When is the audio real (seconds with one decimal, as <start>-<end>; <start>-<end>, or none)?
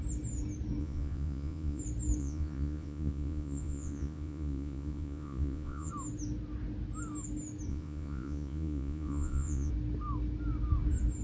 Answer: 0.0-0.8; 1.8-2.2; 5.9-7.7; 9.7-11.2